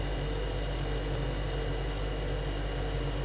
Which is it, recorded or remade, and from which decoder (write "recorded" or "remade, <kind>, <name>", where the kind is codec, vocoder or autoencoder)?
recorded